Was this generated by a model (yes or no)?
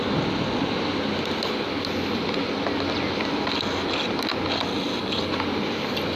no